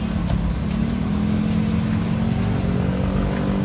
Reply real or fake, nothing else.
real